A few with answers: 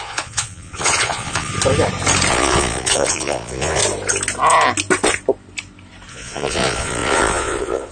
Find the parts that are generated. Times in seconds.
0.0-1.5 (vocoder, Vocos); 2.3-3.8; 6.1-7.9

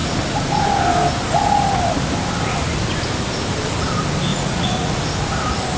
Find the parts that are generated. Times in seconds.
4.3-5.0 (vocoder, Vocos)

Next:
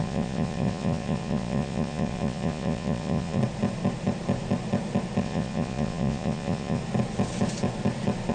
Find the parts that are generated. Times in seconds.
0.0-3.4 (vocoder, Vocos); 5.2-6.8

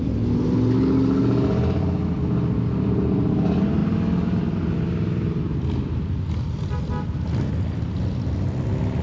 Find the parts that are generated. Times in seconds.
none

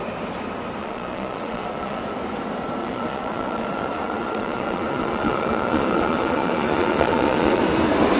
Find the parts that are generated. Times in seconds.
0.8-2.0 (vocoder, Vocos); 2.8-7.6

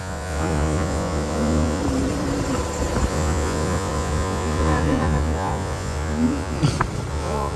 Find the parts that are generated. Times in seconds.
0.0-1.8 (vocoder, Vocos); 3.1-6.6; 7.1-7.6